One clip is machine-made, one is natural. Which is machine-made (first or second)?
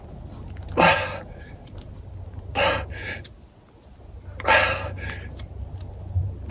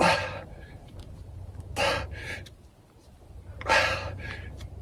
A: second